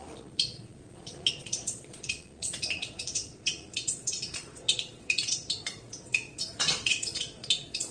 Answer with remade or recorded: remade